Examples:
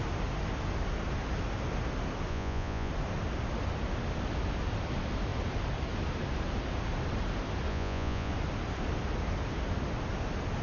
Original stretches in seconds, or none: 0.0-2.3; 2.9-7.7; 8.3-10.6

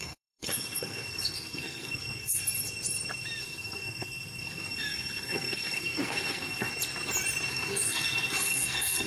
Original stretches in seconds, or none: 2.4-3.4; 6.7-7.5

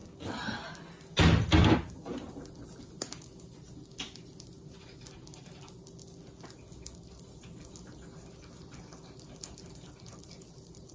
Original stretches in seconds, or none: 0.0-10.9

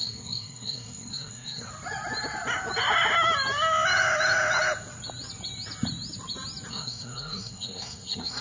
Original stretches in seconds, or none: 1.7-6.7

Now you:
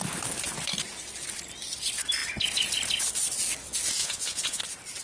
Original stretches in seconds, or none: 0.0-4.0; 4.6-5.0

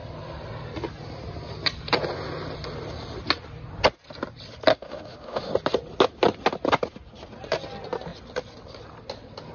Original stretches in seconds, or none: 0.0-4.7; 5.5-9.5

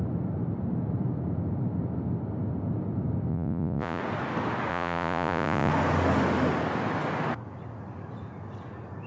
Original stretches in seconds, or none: 0.0-3.3; 4.0-4.7; 5.7-9.1

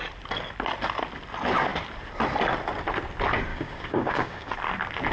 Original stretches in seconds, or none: 0.0-3.5; 4.5-5.1